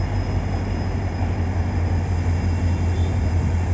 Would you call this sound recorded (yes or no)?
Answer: yes